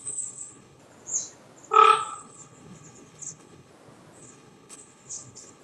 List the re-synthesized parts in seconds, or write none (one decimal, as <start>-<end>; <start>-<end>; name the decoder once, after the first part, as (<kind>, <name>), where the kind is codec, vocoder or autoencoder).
0.0-0.8 (codec, HILCodec); 2.1-3.7; 4.2-5.6